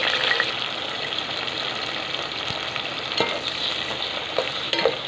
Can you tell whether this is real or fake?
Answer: real